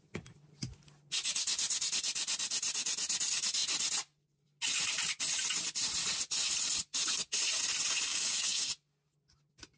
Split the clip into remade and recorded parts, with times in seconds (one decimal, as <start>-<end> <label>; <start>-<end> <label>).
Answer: 0.0-8.1 recorded; 8.1-8.7 remade; 8.7-9.8 recorded